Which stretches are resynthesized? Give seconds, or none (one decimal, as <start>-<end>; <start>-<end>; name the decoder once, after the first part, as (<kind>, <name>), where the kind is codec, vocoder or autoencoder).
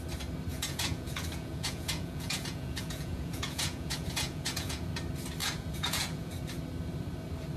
0.5-4.9 (vocoder, Vocos); 5.4-6.3